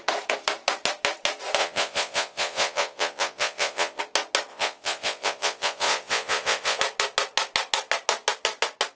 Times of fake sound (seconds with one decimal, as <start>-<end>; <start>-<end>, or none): 1.6-4.0; 4.5-6.8